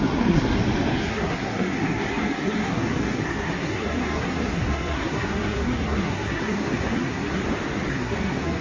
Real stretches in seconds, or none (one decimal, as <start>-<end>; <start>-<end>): 0.6-1.1; 7.4-7.9